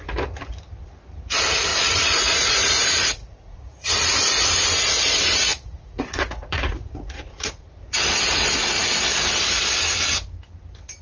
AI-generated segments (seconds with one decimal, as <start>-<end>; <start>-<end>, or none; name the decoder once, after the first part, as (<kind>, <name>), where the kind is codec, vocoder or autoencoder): 1.7-3.9 (vocoder, Vocos); 5.5-7.5